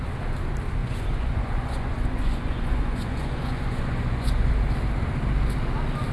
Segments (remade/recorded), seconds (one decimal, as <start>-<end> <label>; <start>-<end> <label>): 0.0-0.8 recorded; 0.8-4.5 remade; 4.5-6.1 recorded